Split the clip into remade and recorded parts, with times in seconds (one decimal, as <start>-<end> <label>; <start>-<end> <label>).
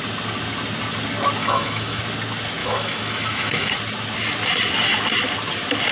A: 0.0-1.4 recorded; 1.4-2.0 remade; 2.0-2.6 recorded; 2.6-3.7 remade; 3.7-5.9 recorded